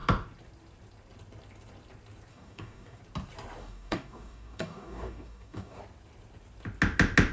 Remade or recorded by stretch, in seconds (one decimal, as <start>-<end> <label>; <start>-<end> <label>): 0.0-2.3 recorded; 2.3-3.0 remade; 3.0-3.6 recorded; 3.6-5.8 remade; 5.8-7.3 recorded